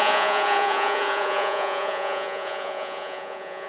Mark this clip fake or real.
fake